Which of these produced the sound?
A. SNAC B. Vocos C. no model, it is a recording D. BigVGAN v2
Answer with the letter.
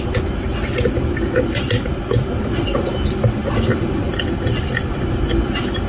C